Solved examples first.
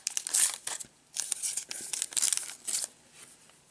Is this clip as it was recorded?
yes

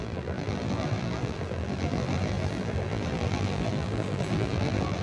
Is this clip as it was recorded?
no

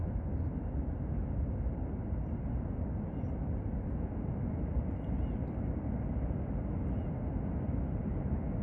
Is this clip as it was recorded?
yes